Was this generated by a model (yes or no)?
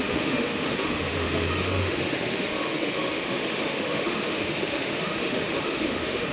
yes